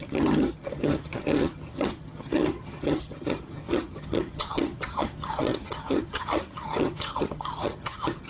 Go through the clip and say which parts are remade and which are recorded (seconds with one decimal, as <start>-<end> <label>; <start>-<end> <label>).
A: 0.0-8.3 remade